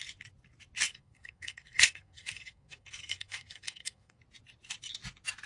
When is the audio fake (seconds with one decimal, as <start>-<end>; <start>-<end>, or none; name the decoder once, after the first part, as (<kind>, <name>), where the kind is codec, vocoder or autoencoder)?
0.9-4.2 (codec, SNAC)